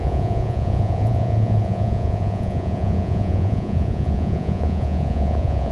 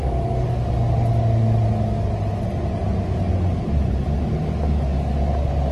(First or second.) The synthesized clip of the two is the first